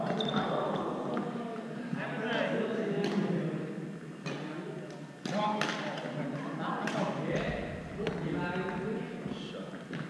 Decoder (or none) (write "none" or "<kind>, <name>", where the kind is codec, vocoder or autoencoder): none